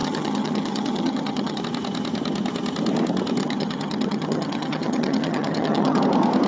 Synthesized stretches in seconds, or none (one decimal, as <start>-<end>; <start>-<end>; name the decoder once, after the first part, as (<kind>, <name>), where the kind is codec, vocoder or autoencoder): 0.0-1.6 (vocoder, HiFi-GAN); 3.4-6.0